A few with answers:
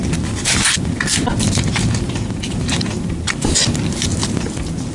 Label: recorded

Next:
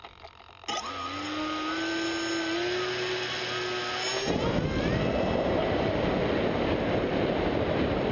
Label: recorded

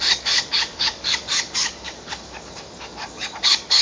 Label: remade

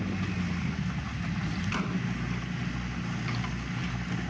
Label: recorded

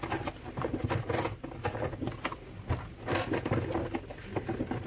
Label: recorded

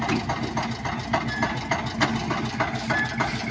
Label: recorded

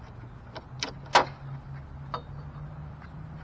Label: recorded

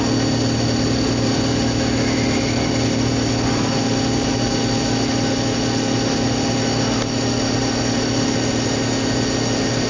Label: recorded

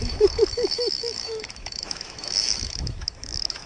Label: remade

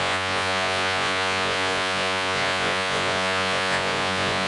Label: remade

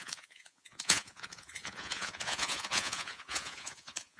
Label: remade